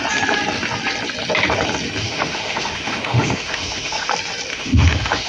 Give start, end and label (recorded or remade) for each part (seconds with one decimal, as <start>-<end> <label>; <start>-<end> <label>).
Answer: 0.0-2.0 recorded; 2.0-4.1 remade; 4.1-4.5 recorded; 4.5-5.3 remade